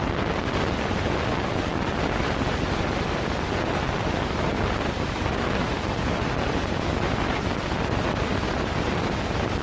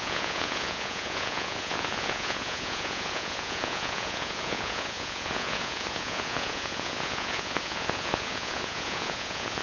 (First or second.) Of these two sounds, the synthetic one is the second